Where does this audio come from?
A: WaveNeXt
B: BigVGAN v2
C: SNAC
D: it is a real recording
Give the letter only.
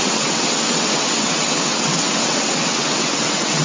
A